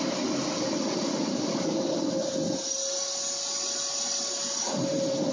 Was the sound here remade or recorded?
recorded